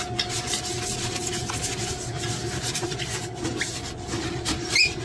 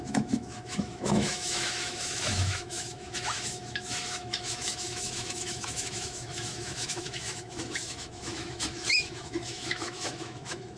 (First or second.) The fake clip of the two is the second